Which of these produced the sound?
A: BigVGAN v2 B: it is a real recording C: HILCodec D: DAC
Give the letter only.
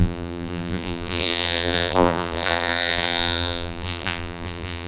A